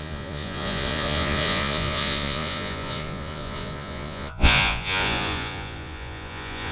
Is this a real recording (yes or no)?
no